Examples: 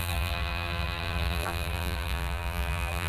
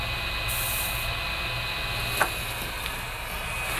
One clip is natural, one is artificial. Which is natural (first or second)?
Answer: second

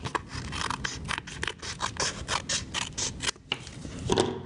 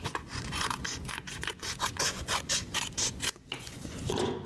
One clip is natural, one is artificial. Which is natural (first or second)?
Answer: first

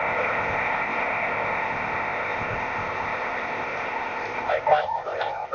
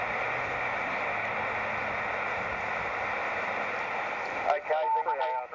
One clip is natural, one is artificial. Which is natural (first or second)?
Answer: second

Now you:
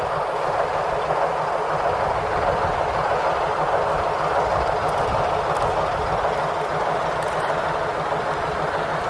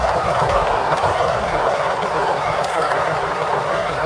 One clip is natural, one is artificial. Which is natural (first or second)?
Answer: first